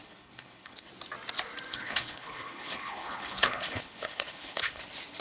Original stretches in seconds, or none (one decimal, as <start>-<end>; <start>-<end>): 0.9-1.7; 4.8-5.2